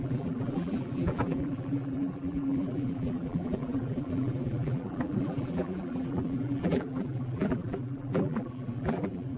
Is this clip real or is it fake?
fake